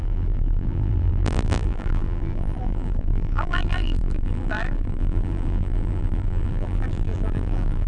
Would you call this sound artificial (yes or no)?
yes